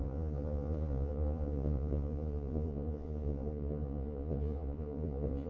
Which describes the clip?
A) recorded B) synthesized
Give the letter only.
B